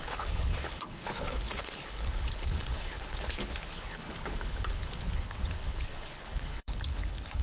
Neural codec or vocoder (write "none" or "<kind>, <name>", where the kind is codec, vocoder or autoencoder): codec, HILCodec